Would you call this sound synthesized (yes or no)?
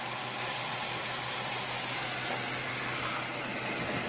no